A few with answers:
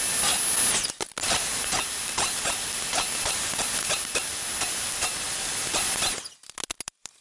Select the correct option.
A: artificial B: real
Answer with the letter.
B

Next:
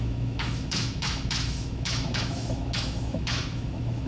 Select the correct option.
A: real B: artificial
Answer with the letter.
B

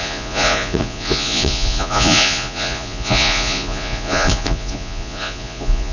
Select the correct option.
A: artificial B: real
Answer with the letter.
A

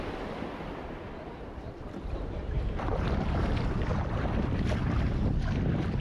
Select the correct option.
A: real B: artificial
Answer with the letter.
B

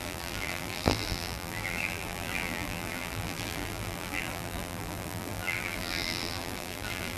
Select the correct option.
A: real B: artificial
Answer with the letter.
B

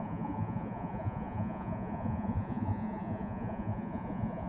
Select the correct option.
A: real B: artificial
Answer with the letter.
B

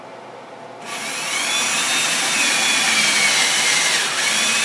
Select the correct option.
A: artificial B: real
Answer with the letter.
B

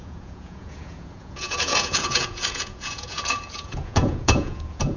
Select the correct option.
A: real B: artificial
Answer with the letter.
B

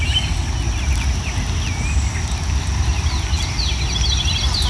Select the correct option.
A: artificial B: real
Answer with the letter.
B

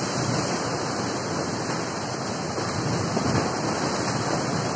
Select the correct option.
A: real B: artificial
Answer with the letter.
A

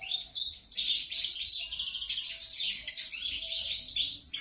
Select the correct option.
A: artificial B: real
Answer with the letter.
B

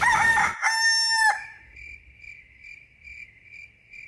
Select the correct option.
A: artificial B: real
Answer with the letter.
B